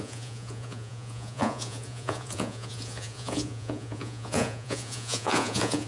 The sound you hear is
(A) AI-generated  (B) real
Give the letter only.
A